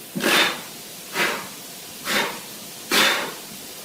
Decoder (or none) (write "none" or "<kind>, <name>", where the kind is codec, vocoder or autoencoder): vocoder, BigVGAN v2